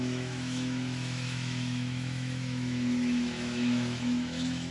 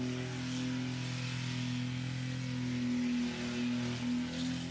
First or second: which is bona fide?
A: second